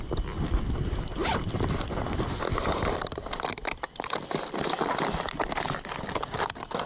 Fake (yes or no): no